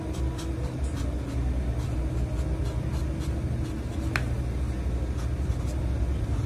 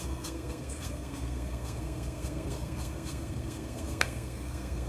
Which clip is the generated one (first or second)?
second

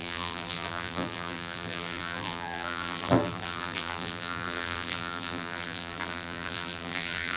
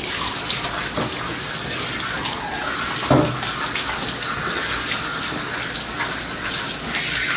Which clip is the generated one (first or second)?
first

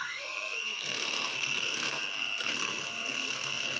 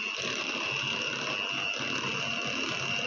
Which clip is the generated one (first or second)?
first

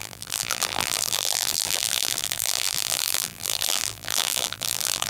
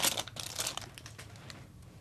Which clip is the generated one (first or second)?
first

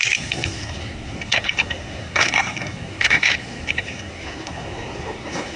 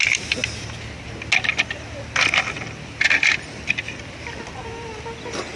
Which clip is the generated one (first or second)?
first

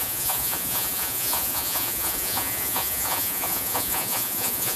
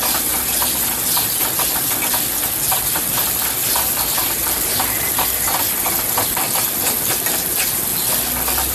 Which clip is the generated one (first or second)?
first